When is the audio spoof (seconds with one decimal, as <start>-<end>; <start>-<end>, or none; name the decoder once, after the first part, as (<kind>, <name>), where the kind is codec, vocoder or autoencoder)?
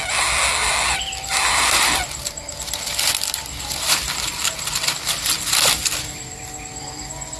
none